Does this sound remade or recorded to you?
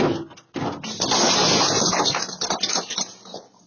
recorded